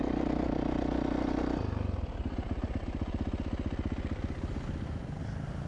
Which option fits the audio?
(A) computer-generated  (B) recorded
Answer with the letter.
B